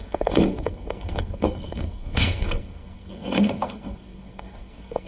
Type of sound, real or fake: fake